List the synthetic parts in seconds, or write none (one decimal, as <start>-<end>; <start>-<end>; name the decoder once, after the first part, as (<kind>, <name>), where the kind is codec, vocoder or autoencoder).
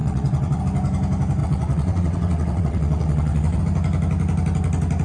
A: 0.0-0.6 (vocoder, WaveNeXt); 1.4-3.6